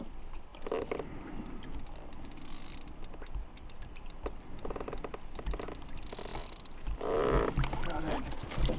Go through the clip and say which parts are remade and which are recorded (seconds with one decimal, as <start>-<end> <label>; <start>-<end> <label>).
0.0-8.8 recorded